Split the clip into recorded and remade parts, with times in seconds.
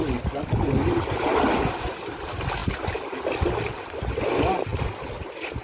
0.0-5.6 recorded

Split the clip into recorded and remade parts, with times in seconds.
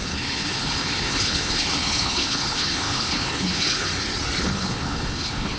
0.0-3.9 remade; 3.9-4.4 recorded; 4.4-5.6 remade